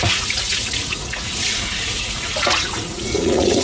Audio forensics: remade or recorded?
remade